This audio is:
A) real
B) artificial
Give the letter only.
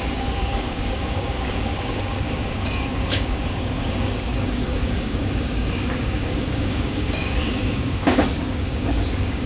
B